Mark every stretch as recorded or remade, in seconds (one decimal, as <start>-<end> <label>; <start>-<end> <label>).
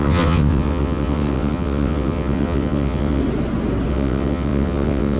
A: 0.0-3.2 remade; 3.2-3.9 recorded; 3.9-5.2 remade